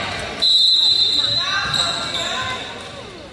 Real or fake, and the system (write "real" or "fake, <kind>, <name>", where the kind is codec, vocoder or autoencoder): real